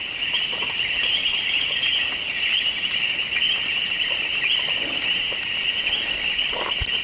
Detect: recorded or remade recorded